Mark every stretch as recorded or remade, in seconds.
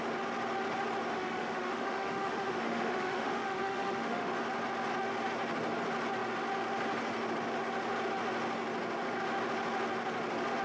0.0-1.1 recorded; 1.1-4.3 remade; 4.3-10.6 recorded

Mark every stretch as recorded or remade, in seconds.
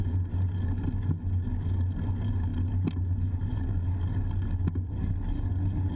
0.0-6.0 recorded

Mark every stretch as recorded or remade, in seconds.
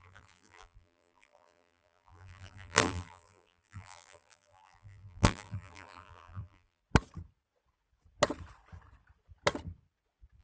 0.0-6.8 remade; 6.8-10.4 recorded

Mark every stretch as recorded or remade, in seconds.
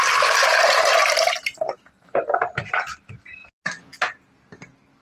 0.0-1.0 recorded; 1.0-3.1 remade; 3.1-5.0 recorded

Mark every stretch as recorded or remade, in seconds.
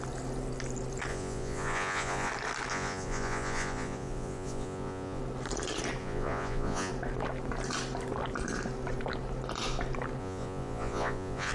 0.0-1.1 recorded; 1.1-2.3 remade; 2.3-2.7 recorded; 2.7-5.2 remade; 5.2-6.0 recorded; 6.0-6.9 remade; 6.9-10.2 recorded; 10.2-11.5 remade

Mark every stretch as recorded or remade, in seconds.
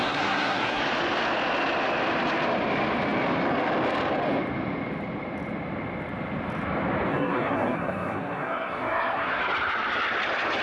0.0-0.8 remade; 0.8-7.1 recorded; 7.1-9.4 remade; 9.4-10.6 recorded